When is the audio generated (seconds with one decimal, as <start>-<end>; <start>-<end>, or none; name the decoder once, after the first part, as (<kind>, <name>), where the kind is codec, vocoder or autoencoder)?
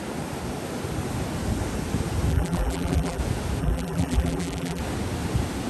2.3-3.2 (vocoder, BigVGAN v2); 3.6-4.8